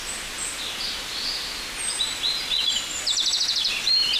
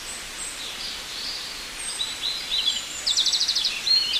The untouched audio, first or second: first